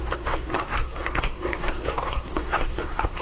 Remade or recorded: remade